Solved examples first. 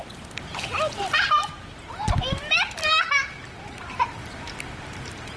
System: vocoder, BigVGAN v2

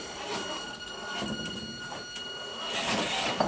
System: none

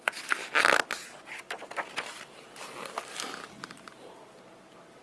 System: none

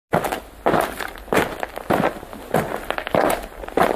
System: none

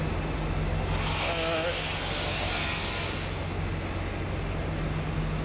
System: none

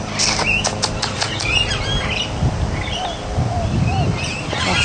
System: vocoder, BigVGAN v2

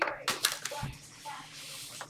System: none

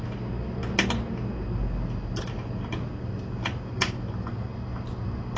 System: none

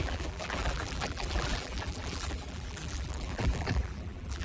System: vocoder, BigVGAN v2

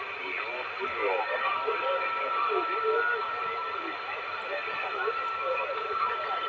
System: vocoder, BigVGAN v2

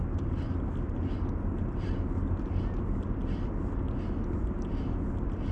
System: none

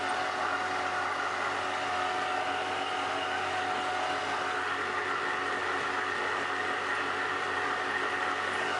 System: none